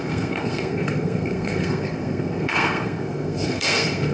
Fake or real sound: fake